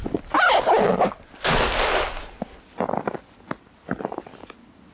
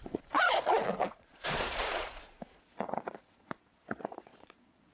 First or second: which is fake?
second